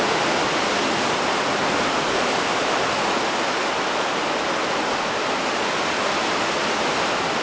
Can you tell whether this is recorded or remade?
recorded